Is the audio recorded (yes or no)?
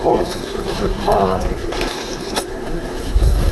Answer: no